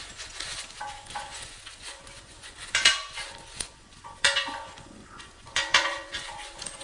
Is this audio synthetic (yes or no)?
yes